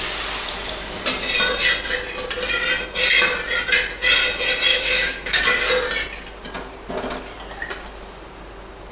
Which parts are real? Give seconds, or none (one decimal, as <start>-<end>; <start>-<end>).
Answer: 0.0-4.7; 5.4-8.9